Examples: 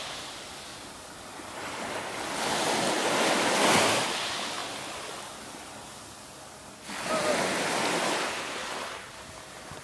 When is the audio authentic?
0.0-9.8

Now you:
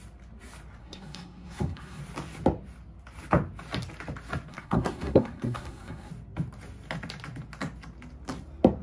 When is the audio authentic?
0.0-0.8; 2.0-4.5; 6.1-8.8

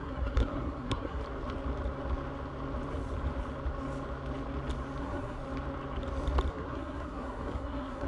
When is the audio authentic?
1.2-5.0; 5.4-6.5